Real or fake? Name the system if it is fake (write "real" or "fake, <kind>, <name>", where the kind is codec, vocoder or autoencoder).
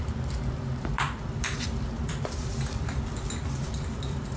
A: fake, vocoder, BigVGAN v2